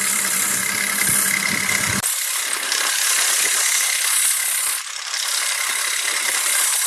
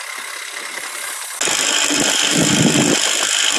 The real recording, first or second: second